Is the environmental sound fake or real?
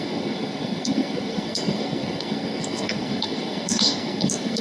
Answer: fake